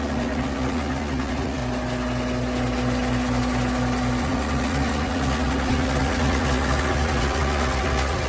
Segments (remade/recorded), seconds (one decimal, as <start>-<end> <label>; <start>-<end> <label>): 0.0-1.6 remade; 1.6-4.2 recorded; 4.2-8.3 remade